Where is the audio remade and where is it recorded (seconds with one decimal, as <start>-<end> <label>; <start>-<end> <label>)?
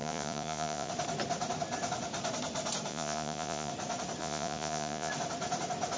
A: 0.0-0.9 remade; 0.9-2.9 recorded; 2.9-3.7 remade; 3.7-4.2 recorded; 4.2-5.1 remade; 5.1-6.0 recorded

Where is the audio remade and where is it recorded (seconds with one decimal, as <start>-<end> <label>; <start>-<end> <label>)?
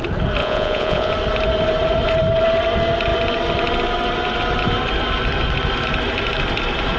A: 0.0-0.4 recorded; 0.4-1.1 remade; 1.1-7.0 recorded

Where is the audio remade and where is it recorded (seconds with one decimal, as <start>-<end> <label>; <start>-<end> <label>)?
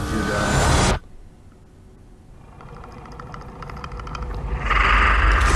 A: 0.0-5.6 recorded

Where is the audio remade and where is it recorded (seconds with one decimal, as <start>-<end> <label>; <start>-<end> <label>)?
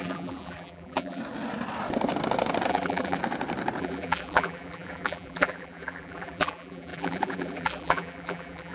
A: 0.0-1.2 remade; 1.2-2.7 recorded; 2.7-3.2 remade; 3.2-3.8 recorded; 3.8-8.7 remade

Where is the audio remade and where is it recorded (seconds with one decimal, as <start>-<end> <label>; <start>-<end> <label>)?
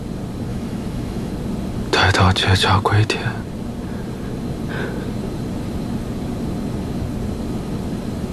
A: 0.0-0.5 recorded; 0.5-1.3 remade; 1.3-8.3 recorded